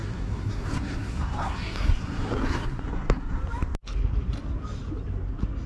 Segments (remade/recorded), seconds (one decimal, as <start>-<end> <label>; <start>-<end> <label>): 0.0-3.4 remade; 3.4-5.7 recorded